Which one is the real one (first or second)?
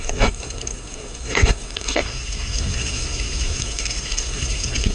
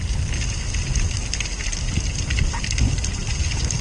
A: second